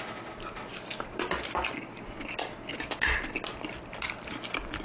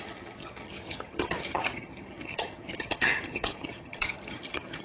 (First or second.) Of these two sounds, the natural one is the first